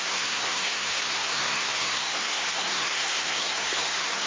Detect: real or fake fake